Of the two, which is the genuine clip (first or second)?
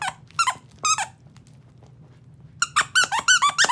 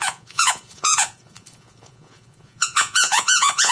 first